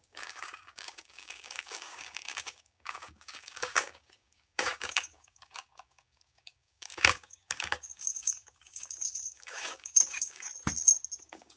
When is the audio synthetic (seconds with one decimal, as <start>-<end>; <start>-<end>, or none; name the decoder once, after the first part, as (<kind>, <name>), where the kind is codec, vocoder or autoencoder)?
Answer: 0.0-10.5 (codec, DAC); 11.2-11.6